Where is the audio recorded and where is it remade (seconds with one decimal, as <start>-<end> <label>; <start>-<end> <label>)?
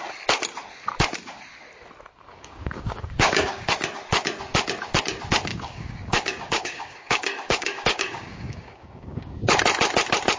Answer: 0.0-2.3 recorded; 2.3-3.7 remade; 3.7-5.5 recorded; 5.5-9.4 remade; 9.4-10.4 recorded